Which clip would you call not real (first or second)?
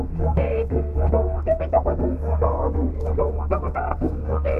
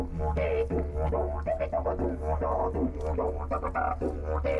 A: first